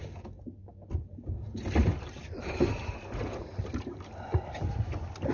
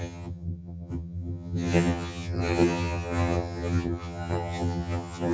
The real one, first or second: first